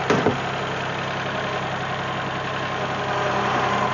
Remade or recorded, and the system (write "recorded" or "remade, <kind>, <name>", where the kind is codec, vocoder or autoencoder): recorded